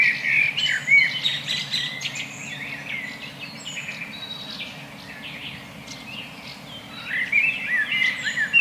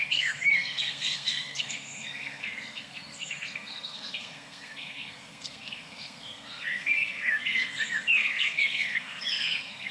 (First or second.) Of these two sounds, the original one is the first